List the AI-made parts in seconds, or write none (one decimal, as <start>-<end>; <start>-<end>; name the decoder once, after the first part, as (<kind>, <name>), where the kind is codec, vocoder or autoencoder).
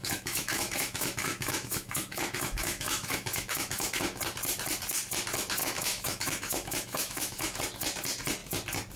0.0-4.2 (autoencoder, DAC-VAE); 5.6-7.6